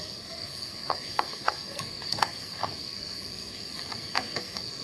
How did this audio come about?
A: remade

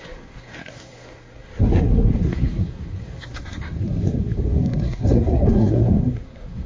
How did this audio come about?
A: remade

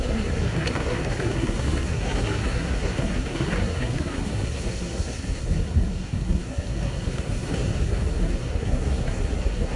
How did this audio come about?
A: remade